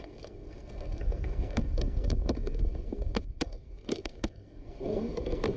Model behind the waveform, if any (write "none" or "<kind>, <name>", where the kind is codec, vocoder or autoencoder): codec, SNAC